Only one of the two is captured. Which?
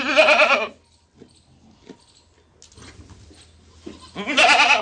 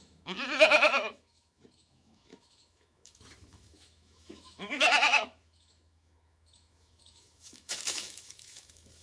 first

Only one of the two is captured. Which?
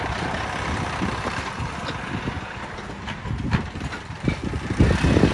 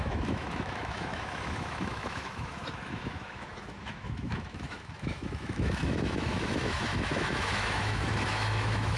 first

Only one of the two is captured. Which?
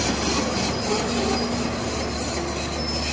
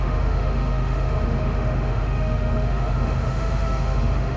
first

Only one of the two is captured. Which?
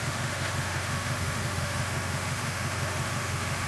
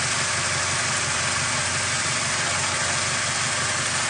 second